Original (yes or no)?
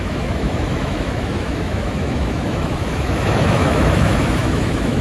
no